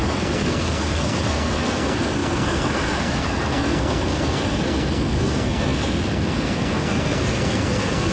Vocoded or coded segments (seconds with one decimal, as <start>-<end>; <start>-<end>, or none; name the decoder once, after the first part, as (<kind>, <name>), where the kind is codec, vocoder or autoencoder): 0.0-8.1 (codec, SNAC)